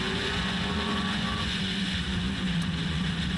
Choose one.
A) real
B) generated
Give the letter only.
B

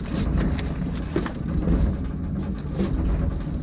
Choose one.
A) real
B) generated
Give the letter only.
A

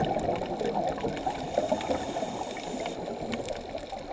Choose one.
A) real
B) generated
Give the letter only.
A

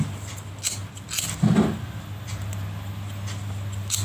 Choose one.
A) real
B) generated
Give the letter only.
A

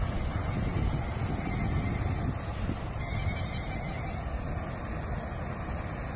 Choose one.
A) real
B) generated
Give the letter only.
A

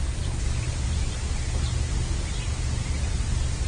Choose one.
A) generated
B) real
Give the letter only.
B